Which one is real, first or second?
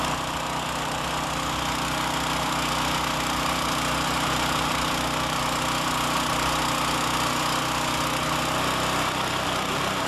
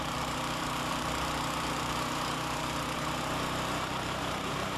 first